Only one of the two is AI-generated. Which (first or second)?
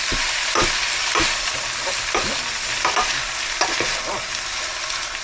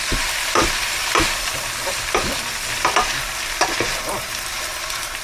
second